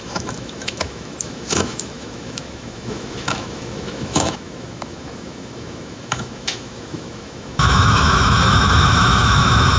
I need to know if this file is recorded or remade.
remade